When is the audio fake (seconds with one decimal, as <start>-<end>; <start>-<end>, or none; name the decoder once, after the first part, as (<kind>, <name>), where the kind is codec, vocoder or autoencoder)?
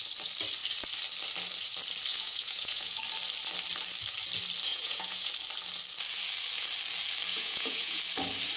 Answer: 2.1-3.0 (vocoder, Vocos); 4.7-5.3; 7.3-8.0